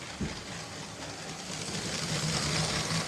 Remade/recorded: recorded